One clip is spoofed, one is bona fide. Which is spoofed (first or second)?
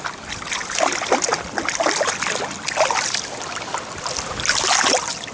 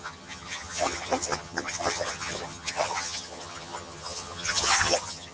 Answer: second